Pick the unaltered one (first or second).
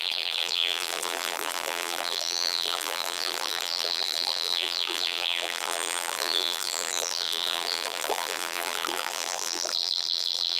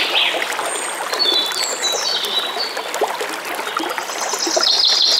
second